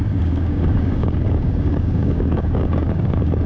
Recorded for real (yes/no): no